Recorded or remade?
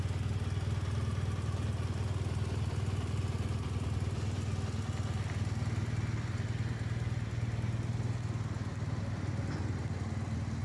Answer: recorded